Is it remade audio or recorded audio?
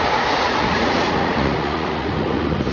remade